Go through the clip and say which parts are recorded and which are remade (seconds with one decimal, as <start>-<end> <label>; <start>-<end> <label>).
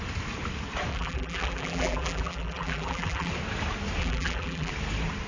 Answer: 0.0-0.9 recorded; 0.9-3.3 remade; 3.3-4.0 recorded; 4.0-4.7 remade; 4.7-5.3 recorded